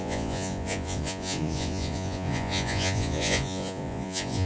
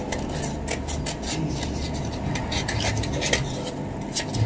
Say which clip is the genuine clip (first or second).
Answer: second